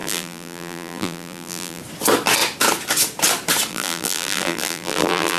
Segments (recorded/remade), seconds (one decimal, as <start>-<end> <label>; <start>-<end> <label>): 0.0-1.8 remade; 1.8-3.7 recorded; 3.7-5.4 remade